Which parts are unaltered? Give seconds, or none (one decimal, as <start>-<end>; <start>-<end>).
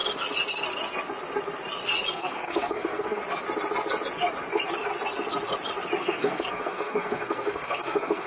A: 0.0-2.1; 3.2-6.0